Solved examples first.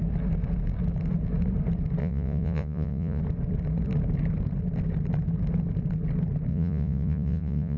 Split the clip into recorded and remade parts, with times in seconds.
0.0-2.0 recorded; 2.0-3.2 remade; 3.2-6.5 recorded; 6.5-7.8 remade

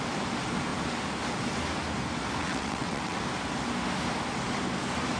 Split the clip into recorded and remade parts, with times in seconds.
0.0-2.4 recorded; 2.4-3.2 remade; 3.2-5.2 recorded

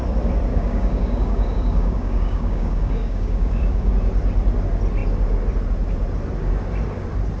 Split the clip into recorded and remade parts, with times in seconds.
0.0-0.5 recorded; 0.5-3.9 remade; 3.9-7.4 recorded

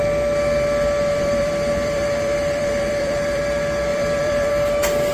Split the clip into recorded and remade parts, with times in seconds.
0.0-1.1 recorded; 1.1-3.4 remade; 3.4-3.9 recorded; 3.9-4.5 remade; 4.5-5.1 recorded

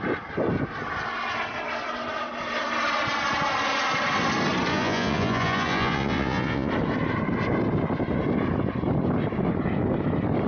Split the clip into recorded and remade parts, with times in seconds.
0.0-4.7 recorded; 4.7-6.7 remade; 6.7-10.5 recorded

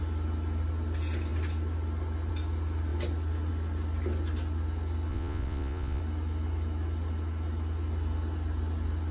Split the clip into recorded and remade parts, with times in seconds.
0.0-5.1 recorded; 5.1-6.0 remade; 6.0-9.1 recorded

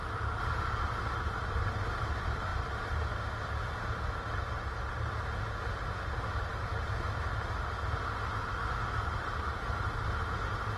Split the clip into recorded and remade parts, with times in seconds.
0.0-10.8 recorded